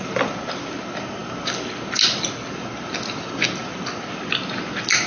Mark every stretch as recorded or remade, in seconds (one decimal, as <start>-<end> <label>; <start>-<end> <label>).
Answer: 0.0-5.1 recorded